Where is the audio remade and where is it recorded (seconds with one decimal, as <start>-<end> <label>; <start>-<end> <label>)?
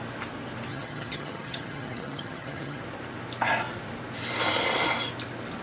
0.0-0.7 recorded; 0.7-2.8 remade; 2.8-5.6 recorded